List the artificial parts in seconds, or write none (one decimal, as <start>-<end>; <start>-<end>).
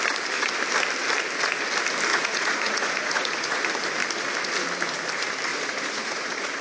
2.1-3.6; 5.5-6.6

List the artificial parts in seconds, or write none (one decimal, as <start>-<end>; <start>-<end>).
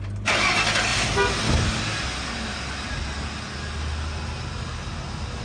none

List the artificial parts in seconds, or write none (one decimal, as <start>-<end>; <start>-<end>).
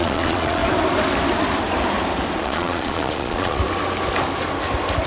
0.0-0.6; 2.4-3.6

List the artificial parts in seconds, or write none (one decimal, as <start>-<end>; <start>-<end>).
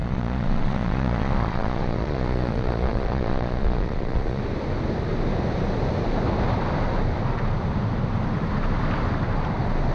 0.0-4.4